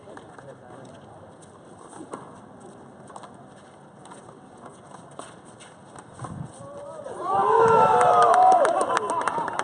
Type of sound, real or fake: real